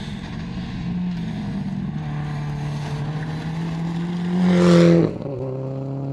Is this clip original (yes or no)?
yes